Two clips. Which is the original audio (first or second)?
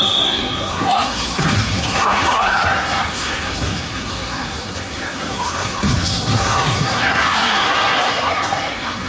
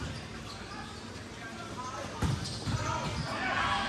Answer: second